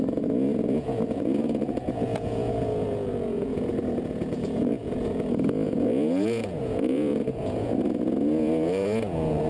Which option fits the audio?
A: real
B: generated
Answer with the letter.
B